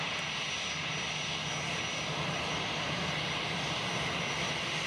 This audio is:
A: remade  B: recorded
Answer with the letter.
B